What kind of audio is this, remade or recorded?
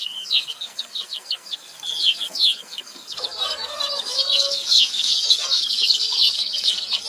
remade